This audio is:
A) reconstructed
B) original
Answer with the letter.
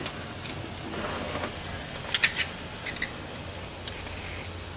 B